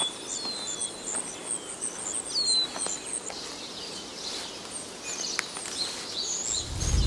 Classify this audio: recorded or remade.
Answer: recorded